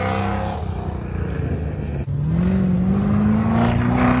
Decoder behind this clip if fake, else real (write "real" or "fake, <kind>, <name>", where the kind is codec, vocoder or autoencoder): real